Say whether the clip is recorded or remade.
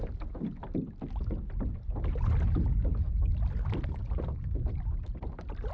recorded